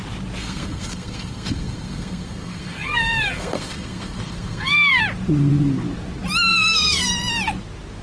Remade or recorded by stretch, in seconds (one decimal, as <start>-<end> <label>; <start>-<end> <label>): 0.0-0.4 recorded; 0.4-5.0 remade; 5.0-6.5 recorded; 6.5-7.1 remade; 7.1-8.0 recorded